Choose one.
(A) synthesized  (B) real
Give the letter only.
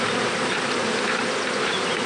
A